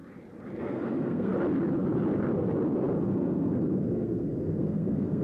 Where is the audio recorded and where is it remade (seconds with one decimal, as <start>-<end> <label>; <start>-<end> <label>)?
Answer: 0.0-0.6 recorded; 0.6-1.3 remade; 1.3-3.0 recorded; 3.0-5.2 remade